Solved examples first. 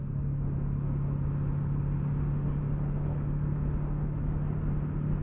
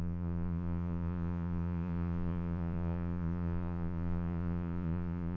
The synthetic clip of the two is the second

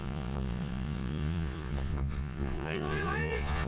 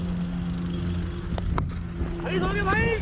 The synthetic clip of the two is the first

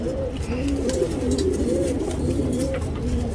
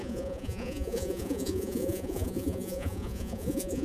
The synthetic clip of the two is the second